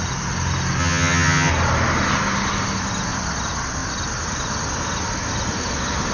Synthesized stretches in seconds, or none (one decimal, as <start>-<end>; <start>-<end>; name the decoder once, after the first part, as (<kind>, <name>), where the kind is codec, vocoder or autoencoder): 0.8-1.5 (vocoder, HiFi-GAN)